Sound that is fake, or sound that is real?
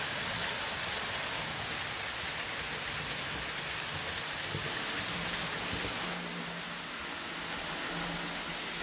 real